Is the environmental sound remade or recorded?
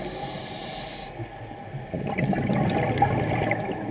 recorded